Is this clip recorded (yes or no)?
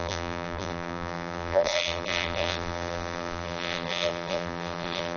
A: no